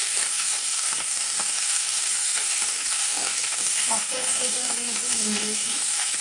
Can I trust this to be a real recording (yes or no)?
no